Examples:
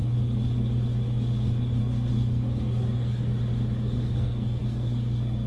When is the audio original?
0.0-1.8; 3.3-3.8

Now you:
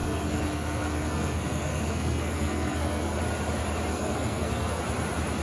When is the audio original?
3.2-3.9; 4.8-5.4

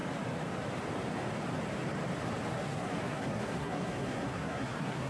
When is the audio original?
0.0-2.5

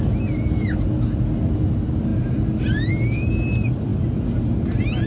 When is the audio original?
0.0-5.1

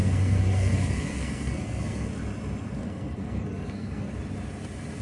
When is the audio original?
2.1-2.8; 4.1-5.0

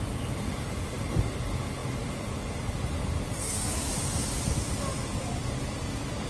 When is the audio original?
0.0-3.4; 3.9-6.3